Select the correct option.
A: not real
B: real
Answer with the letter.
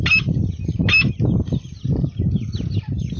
B